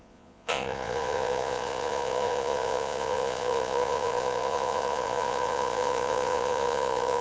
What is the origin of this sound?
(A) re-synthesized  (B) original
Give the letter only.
A